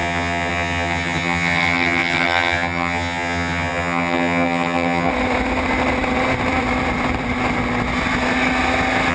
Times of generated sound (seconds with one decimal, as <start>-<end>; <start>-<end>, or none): 0.0-5.1